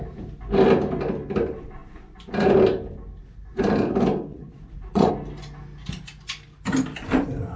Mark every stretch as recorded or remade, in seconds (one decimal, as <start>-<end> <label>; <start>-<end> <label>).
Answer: 0.0-4.3 recorded; 4.3-5.1 remade; 5.1-7.6 recorded